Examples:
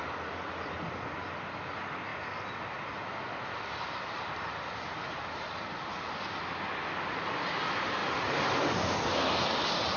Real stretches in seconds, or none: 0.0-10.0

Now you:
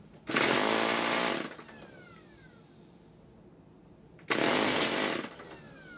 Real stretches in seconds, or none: 0.0-6.0

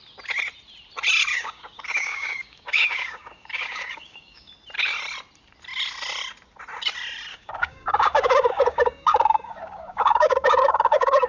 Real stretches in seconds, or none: 0.0-1.3; 4.5-7.3